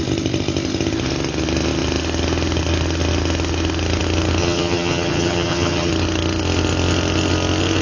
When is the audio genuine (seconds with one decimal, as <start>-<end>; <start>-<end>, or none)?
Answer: 0.0-4.4; 5.9-7.8